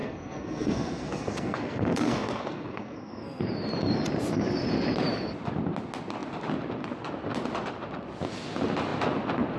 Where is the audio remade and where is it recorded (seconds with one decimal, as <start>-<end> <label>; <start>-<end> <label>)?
0.0-3.4 remade; 3.4-9.6 recorded